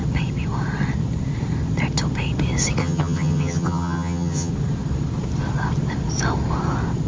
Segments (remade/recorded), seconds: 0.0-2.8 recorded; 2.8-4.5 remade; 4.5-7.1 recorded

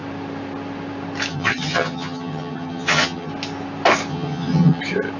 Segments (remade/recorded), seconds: 0.0-1.3 recorded; 1.3-3.3 remade; 3.3-4.1 recorded; 4.1-4.8 remade; 4.8-5.2 recorded

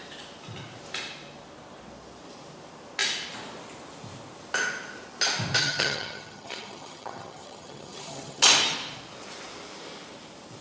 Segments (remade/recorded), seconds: 0.0-5.6 recorded; 5.6-8.4 remade; 8.4-10.6 recorded

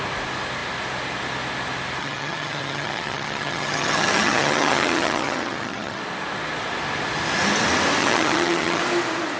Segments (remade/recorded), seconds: 0.0-2.0 recorded; 2.0-6.0 remade; 6.0-8.0 recorded; 8.0-8.8 remade; 8.8-9.4 recorded

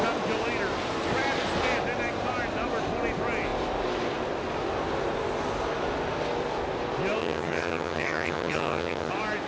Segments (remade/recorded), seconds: 0.0-7.2 recorded; 7.2-9.1 remade; 9.1-9.5 recorded

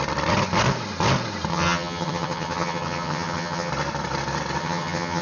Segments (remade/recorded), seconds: 0.0-1.5 recorded; 1.5-3.7 remade; 3.7-4.6 recorded; 4.6-5.2 remade